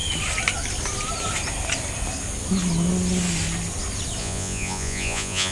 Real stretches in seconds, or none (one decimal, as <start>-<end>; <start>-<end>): 0.0-4.2